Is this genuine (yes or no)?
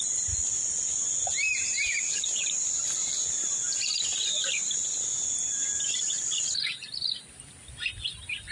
yes